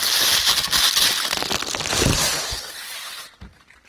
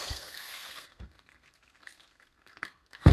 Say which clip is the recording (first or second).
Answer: first